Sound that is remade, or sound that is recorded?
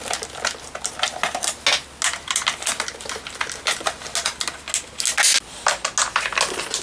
recorded